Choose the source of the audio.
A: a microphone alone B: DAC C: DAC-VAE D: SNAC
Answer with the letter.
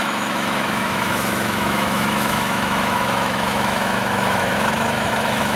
C